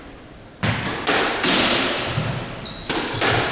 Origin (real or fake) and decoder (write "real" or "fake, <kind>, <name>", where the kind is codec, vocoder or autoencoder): real